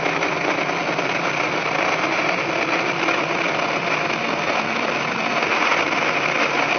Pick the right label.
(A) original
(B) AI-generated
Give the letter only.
A